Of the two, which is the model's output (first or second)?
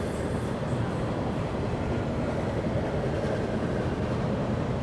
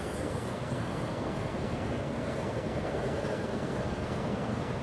second